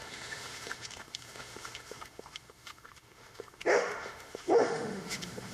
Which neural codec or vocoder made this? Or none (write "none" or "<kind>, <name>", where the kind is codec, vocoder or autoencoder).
autoencoder, DAC-VAE